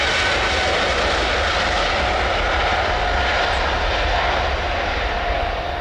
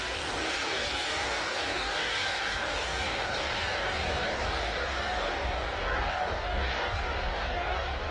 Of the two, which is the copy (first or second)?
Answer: second